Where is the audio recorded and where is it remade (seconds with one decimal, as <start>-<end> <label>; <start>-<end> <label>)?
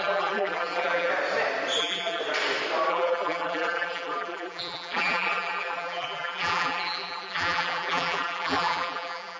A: 0.0-1.1 remade; 1.1-1.8 recorded; 1.8-2.2 remade; 2.2-2.9 recorded; 2.9-9.4 remade